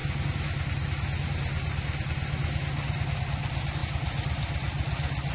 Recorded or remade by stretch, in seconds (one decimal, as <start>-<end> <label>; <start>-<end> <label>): 0.0-5.3 recorded